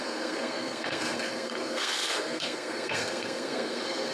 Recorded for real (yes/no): no